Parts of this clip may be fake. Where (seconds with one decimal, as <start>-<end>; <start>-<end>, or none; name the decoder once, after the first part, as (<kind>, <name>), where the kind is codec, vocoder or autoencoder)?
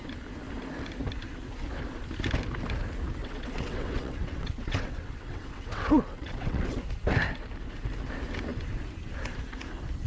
3.2-6.8 (vocoder, WaveNeXt)